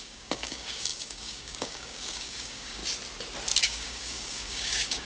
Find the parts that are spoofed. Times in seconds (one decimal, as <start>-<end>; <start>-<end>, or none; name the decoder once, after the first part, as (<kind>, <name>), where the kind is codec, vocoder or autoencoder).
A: 0.0-2.8 (codec, DAC); 3.6-5.0